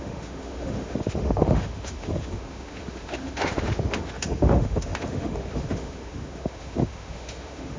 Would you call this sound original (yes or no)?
no